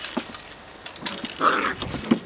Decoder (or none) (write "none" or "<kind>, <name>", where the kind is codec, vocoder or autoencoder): none